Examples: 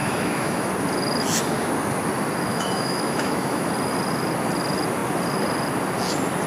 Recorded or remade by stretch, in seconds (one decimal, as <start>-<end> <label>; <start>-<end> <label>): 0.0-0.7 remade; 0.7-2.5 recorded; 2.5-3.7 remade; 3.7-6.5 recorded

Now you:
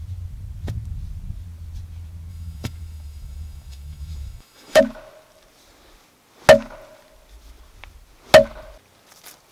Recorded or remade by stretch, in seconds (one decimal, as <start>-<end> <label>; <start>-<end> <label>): 0.0-2.3 recorded; 2.3-4.8 remade; 4.8-9.5 recorded

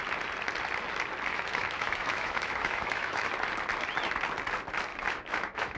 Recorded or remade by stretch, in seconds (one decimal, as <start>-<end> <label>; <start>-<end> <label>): 0.0-1.3 recorded; 1.3-3.3 remade; 3.3-4.9 recorded; 4.9-5.8 remade

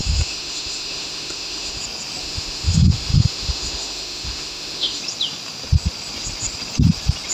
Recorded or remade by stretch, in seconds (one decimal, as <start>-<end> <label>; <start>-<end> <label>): 0.0-1.8 remade; 1.8-2.2 recorded; 2.2-5.0 remade; 5.0-7.3 recorded

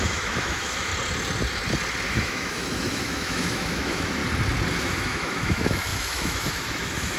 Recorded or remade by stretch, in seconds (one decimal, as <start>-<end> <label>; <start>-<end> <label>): 0.0-0.9 remade; 0.9-2.1 recorded; 2.1-4.2 remade; 4.2-4.8 recorded; 4.8-7.2 remade